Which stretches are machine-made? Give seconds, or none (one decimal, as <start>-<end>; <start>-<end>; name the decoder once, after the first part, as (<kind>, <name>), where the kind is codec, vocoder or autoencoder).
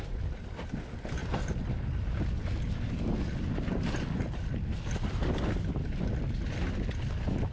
none